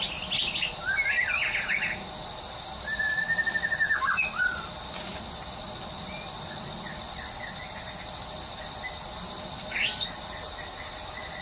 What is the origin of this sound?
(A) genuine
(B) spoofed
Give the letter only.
A